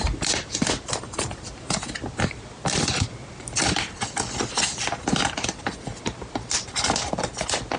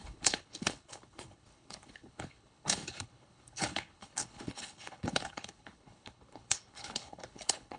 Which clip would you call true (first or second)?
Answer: first